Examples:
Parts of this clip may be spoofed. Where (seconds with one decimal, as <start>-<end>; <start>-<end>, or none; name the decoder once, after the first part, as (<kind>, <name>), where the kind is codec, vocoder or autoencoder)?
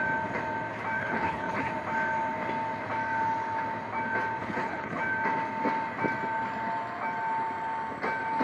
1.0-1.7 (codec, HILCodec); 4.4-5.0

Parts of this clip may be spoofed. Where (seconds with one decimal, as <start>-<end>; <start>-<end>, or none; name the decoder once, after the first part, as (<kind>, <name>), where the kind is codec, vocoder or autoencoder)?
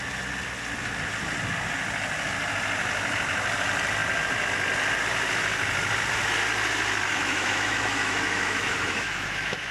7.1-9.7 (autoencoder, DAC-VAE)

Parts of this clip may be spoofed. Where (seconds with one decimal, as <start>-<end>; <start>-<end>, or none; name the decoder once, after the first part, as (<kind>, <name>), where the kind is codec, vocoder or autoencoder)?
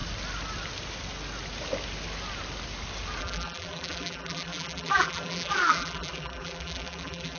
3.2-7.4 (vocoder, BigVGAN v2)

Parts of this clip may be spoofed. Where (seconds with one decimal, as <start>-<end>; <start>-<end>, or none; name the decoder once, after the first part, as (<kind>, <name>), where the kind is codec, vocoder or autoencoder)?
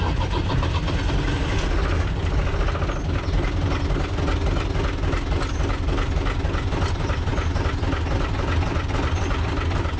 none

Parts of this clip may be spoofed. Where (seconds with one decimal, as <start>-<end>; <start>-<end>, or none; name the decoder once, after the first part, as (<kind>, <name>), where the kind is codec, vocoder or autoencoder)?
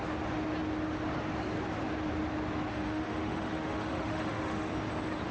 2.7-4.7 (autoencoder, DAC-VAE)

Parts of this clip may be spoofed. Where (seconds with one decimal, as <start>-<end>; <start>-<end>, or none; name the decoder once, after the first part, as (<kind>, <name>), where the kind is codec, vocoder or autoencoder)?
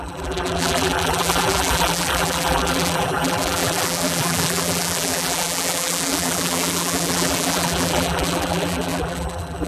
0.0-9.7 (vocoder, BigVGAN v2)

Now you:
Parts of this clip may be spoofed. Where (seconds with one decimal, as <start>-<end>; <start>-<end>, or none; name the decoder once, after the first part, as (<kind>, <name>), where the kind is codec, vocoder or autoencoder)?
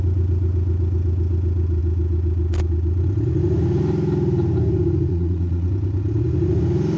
5.1-5.7 (vocoder, Vocos)